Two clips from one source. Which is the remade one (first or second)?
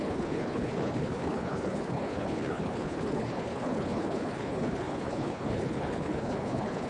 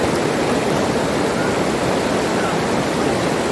first